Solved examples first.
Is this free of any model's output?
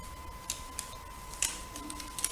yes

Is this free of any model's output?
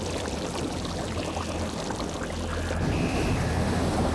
yes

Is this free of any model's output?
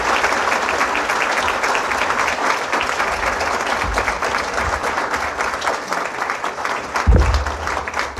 yes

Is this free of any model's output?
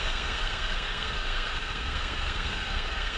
no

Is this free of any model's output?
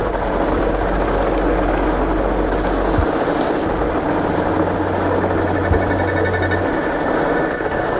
yes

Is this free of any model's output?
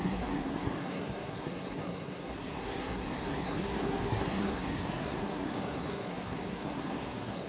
no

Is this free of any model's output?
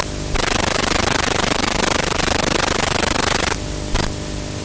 yes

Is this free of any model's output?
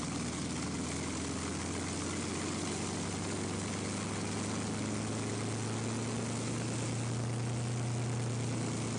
yes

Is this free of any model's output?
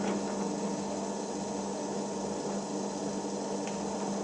yes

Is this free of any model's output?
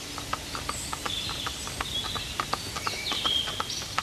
yes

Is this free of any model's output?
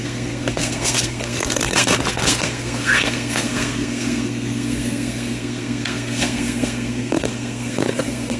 no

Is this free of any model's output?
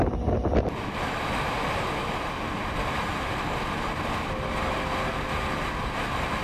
yes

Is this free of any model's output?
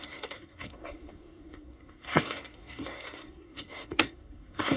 no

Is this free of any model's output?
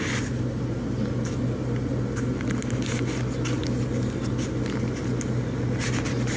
yes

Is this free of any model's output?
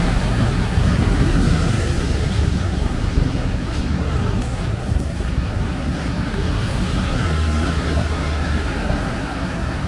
no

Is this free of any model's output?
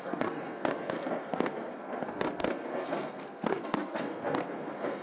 no